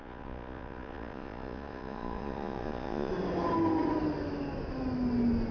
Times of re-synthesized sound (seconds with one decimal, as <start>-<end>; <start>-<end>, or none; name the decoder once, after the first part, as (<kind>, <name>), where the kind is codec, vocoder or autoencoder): 0.0-3.1 (vocoder, Vocos)